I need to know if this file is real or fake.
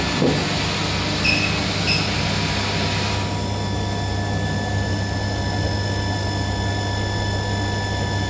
real